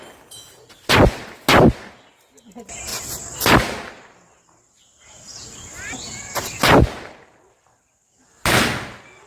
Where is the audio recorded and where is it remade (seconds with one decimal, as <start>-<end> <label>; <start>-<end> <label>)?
0.0-9.3 recorded